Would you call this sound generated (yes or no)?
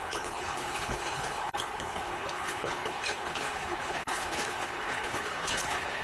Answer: yes